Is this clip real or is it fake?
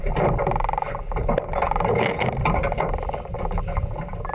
real